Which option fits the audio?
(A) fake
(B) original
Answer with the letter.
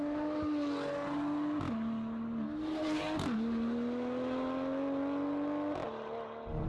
B